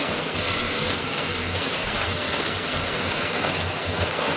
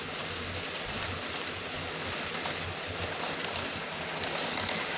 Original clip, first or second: second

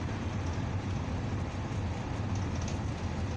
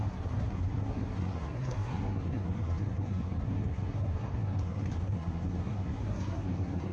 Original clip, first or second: first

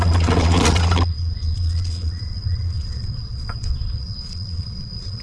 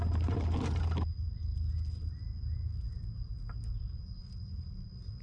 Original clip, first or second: second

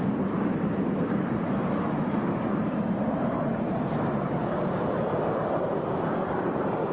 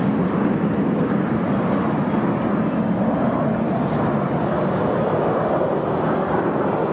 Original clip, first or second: second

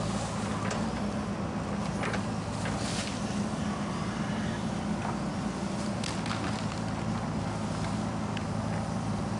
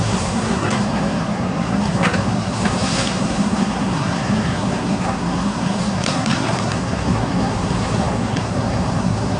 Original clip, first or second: first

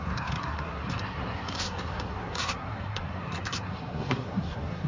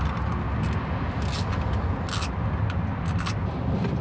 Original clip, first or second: second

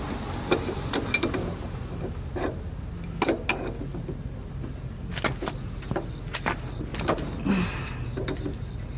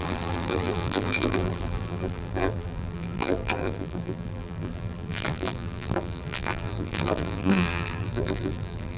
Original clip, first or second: first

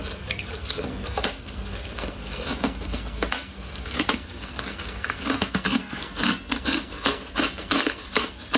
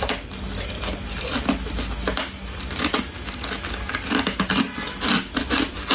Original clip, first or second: second